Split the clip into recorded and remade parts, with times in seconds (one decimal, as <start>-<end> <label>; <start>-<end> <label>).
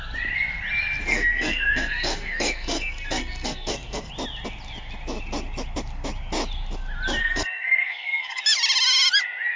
0.0-1.1 recorded; 1.1-4.1 remade; 4.1-7.2 recorded; 7.2-8.4 remade; 8.4-9.6 recorded